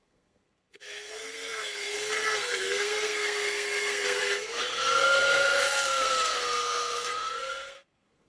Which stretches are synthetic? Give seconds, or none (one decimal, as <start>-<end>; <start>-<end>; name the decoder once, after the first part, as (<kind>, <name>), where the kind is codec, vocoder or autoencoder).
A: 0.0-8.3 (codec, SNAC)